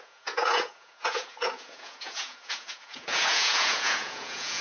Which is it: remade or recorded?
remade